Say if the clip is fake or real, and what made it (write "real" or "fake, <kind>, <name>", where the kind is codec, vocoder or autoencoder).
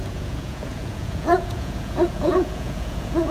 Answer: fake, vocoder, Vocos